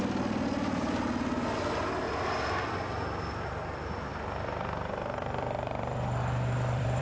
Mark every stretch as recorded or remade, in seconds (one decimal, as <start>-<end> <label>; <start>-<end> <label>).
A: 0.0-4.1 recorded; 4.1-7.0 remade